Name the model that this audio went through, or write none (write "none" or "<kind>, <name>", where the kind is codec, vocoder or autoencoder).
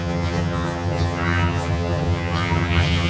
vocoder, HiFi-GAN